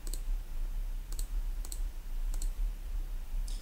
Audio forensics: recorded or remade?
remade